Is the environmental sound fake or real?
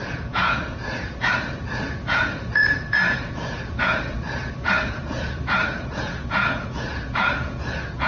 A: fake